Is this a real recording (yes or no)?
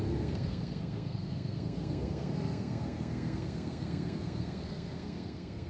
no